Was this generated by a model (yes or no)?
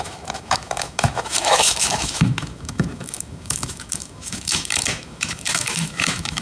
yes